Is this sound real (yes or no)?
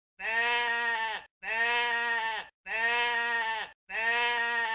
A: yes